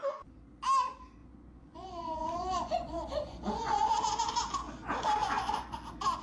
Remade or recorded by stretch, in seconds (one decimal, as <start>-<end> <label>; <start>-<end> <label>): 0.0-1.2 recorded; 1.2-3.9 remade; 3.9-5.2 recorded; 5.2-5.8 remade; 5.8-6.2 recorded